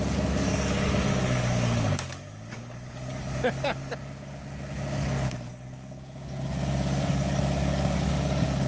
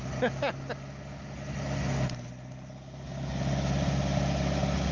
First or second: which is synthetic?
first